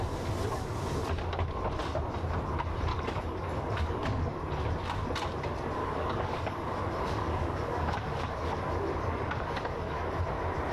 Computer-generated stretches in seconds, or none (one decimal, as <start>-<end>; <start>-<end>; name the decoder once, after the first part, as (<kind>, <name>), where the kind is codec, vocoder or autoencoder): 2.9-4.4 (codec, DAC); 5.8-10.2